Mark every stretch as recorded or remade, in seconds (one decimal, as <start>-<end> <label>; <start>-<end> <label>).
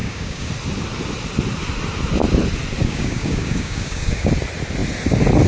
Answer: 0.0-0.5 remade; 0.5-2.8 recorded; 2.8-4.3 remade; 4.3-5.5 recorded